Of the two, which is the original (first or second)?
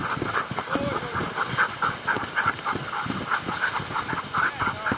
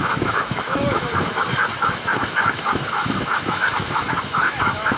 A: first